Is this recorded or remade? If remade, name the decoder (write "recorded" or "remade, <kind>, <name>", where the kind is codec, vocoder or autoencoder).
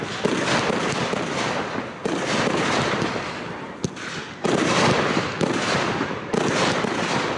recorded